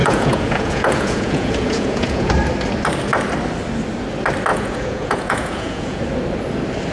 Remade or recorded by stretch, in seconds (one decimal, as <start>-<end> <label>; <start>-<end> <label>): 0.0-2.3 remade; 2.3-4.5 recorded; 4.5-6.0 remade; 6.0-6.9 recorded